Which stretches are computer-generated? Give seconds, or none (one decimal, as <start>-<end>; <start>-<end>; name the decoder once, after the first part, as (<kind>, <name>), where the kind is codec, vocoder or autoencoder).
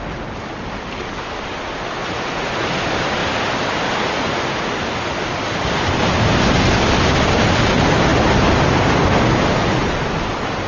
2.0-2.7 (vocoder, Vocos)